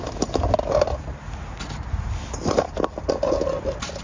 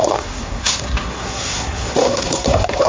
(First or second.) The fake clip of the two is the second